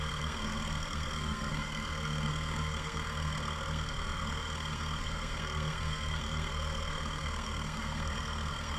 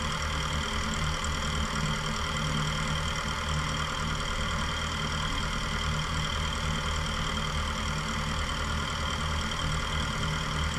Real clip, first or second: second